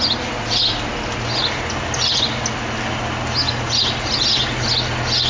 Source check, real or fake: real